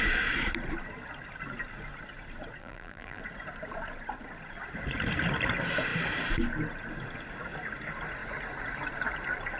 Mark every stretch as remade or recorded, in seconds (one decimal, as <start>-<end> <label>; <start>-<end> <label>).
0.0-2.6 recorded; 2.6-3.2 remade; 3.2-9.6 recorded